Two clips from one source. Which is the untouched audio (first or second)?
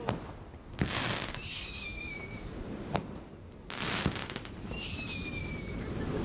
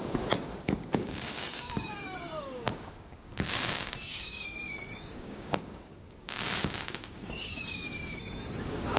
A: first